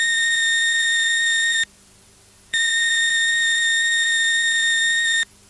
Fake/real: fake